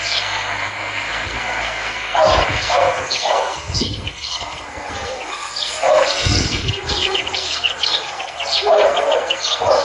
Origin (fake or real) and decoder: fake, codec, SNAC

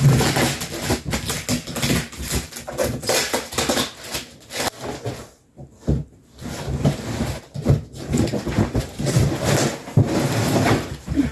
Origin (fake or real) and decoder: real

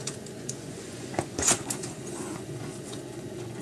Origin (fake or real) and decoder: fake, vocoder, Vocos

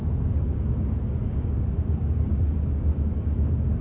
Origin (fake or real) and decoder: fake, codec, DAC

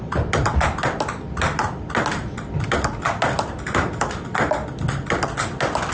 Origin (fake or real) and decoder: real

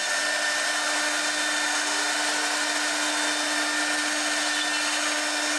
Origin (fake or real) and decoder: real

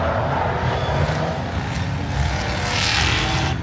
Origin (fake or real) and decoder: real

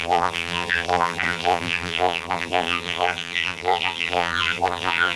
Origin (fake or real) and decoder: fake, vocoder, BigVGAN v2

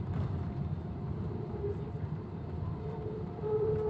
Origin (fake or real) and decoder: fake, vocoder, BigVGAN v2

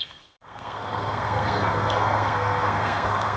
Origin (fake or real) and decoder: fake, codec, SNAC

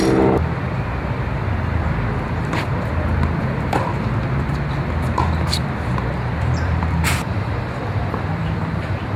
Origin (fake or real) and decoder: fake, vocoder, BigVGAN v2